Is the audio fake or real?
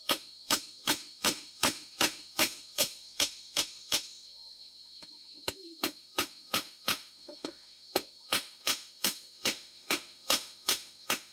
fake